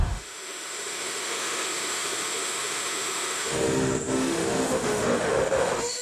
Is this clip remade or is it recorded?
remade